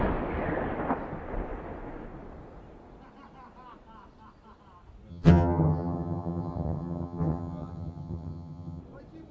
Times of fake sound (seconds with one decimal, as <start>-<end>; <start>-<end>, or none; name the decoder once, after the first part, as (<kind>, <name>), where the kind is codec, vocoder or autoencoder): 5.1-8.8 (vocoder, HiFi-GAN)